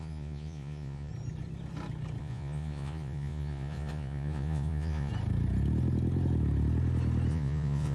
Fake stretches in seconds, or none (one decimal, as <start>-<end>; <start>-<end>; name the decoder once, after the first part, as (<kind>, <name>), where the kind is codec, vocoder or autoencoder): 0.0-1.1 (vocoder, Vocos); 2.2-5.1; 7.3-7.9